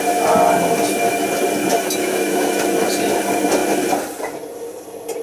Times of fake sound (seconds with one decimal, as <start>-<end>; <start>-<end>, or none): 1.7-2.6